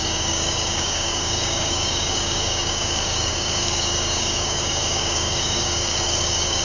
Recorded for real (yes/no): no